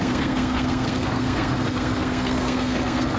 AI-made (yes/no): yes